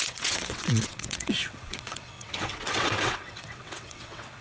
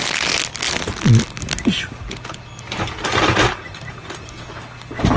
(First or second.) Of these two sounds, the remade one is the first